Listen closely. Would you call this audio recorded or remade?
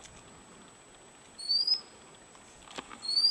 recorded